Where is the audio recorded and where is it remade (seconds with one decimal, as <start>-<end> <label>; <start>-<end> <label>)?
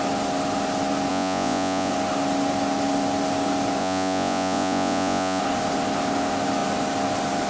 0.0-1.1 recorded; 1.1-1.9 remade; 1.9-3.8 recorded; 3.8-5.4 remade; 5.4-7.5 recorded